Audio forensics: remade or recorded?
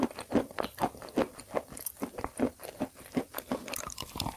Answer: remade